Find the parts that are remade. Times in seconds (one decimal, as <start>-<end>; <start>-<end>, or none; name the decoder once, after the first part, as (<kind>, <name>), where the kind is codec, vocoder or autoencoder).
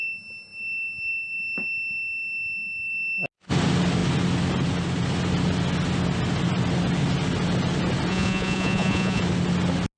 8.1-9.2 (vocoder, Vocos)